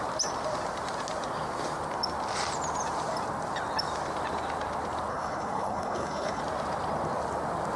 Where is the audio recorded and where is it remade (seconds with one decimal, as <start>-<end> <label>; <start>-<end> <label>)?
0.0-5.1 recorded; 5.1-6.4 remade; 6.4-7.8 recorded